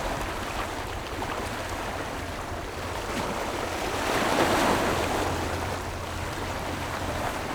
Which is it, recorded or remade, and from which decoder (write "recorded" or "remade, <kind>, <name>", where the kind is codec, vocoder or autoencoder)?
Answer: remade, vocoder, BigVGAN v2